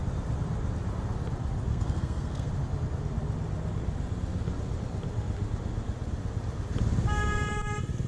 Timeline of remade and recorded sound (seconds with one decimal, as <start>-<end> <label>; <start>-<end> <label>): 0.0-1.7 recorded; 1.7-2.5 remade; 2.5-8.1 recorded